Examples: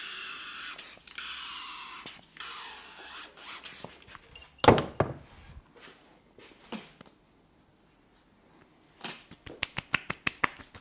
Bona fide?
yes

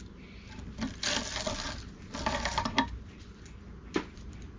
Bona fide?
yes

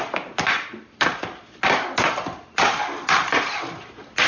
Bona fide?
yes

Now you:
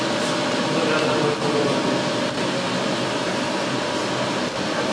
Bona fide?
yes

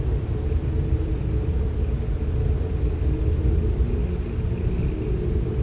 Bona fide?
yes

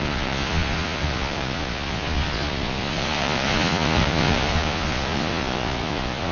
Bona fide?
no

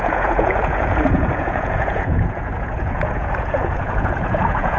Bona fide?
no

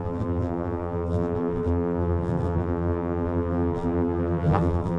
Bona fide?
no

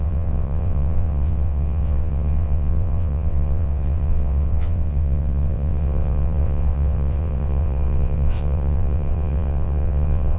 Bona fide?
no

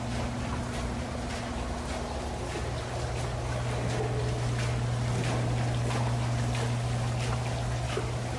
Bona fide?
yes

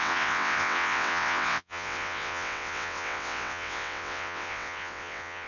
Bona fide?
no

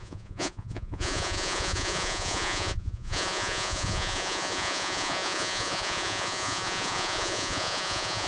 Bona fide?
no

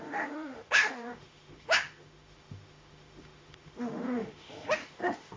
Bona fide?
no